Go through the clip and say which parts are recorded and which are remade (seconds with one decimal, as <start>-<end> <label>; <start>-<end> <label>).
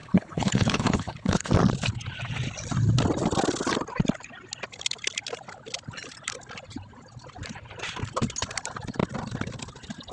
0.0-1.5 remade; 1.5-10.1 recorded